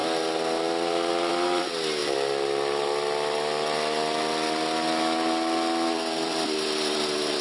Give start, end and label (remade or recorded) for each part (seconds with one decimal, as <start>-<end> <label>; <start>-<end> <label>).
0.0-1.3 recorded; 1.3-2.0 remade; 2.0-6.2 recorded; 6.2-7.4 remade